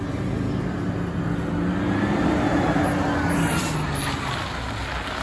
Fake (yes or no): no